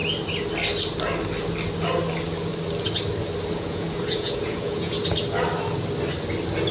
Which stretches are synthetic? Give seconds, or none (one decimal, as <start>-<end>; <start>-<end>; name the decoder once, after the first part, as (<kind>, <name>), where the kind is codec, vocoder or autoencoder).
3.5-5.0 (vocoder, Vocos)